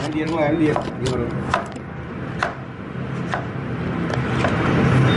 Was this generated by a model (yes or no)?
no